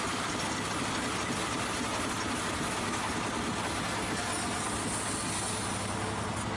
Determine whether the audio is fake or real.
real